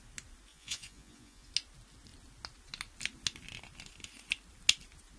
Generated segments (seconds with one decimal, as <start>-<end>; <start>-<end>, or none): 0.5-1.5